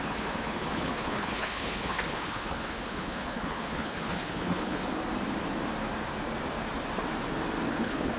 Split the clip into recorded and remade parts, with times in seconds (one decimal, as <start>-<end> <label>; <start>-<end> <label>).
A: 0.0-4.8 remade; 4.8-7.7 recorded; 7.7-8.2 remade